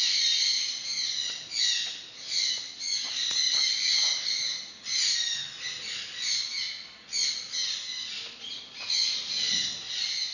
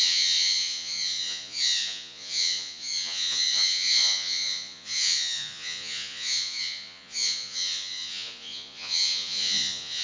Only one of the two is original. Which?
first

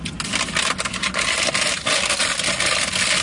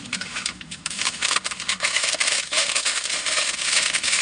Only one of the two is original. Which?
first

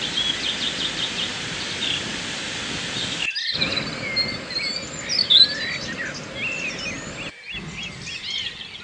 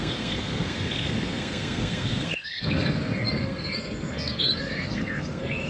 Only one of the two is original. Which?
first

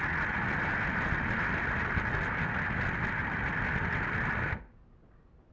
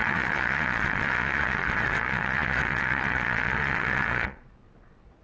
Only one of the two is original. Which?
first